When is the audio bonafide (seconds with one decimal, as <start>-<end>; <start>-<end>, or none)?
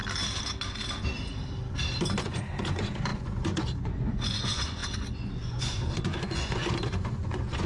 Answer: 0.0-2.2